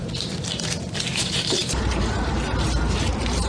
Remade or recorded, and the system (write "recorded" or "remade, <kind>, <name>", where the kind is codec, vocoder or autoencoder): remade, vocoder, BigVGAN v2